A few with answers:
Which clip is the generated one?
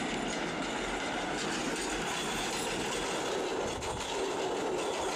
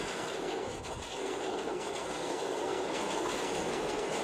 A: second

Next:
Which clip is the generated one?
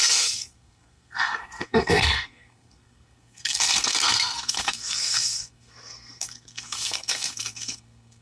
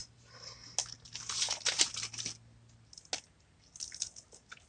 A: first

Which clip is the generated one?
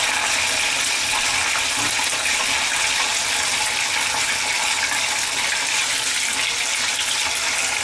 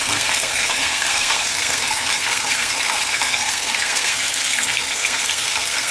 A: second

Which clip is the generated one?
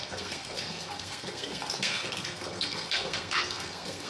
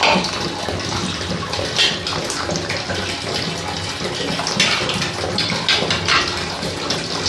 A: first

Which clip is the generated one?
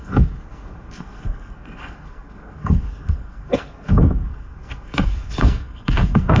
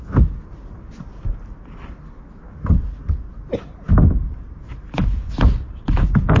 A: first